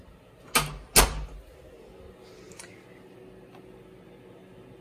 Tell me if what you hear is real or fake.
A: real